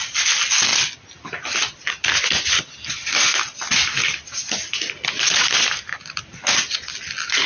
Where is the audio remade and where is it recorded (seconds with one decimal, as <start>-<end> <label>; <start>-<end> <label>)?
0.0-7.5 recorded